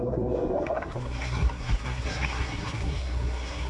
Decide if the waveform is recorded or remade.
remade